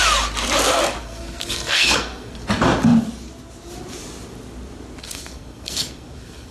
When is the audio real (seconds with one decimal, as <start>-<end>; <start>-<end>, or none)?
0.0-1.0; 2.4-5.0